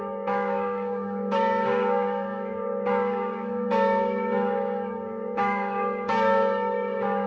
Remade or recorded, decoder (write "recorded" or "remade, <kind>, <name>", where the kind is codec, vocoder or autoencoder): remade, codec, DAC